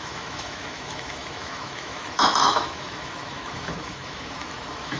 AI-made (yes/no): yes